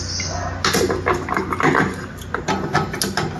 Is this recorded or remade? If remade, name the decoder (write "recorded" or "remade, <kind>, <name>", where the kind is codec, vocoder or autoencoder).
recorded